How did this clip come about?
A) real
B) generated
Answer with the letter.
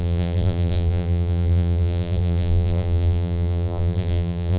B